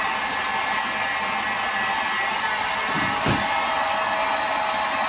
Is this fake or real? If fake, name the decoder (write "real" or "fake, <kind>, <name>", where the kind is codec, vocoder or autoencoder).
real